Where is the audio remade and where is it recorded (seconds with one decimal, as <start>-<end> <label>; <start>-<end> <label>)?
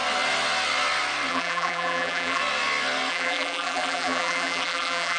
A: 0.0-1.3 recorded; 1.3-2.4 remade; 2.4-3.1 recorded; 3.1-5.2 remade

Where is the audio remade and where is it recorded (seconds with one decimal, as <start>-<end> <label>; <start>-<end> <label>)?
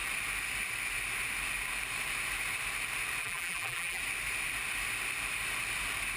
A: 0.0-3.2 recorded; 3.2-4.0 remade; 4.0-6.2 recorded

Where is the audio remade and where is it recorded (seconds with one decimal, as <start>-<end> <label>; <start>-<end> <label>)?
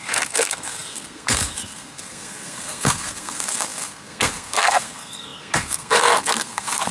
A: 0.0-6.9 remade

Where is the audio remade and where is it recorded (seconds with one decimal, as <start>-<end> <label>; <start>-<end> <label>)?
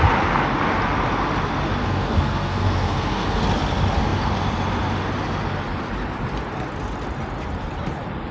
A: 0.0-1.8 recorded; 1.8-3.4 remade; 3.4-8.3 recorded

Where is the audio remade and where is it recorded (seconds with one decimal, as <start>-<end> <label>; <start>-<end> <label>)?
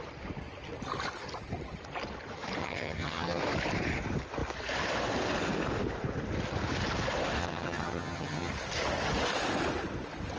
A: 0.0-2.6 recorded; 2.6-3.4 remade; 3.4-7.4 recorded; 7.4-8.5 remade; 8.5-10.4 recorded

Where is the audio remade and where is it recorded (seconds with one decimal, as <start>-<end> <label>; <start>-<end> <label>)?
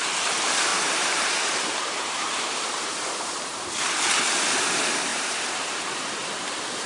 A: 0.0-0.7 recorded; 0.7-3.4 remade; 3.4-5.1 recorded; 5.1-6.3 remade; 6.3-6.9 recorded